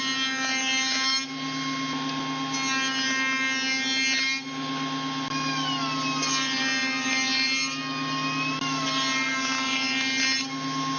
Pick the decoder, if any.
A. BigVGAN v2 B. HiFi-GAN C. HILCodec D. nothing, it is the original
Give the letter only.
D